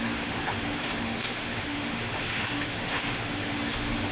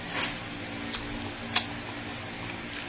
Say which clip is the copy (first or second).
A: first